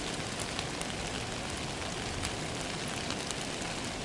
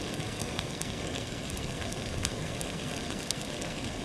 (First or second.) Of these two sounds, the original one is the first